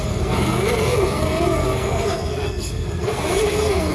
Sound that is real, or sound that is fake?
fake